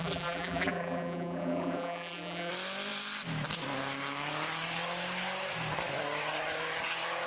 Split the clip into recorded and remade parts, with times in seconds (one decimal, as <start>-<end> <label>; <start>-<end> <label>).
0.0-2.5 remade; 2.5-7.3 recorded